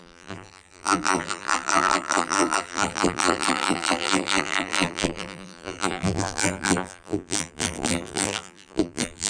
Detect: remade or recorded remade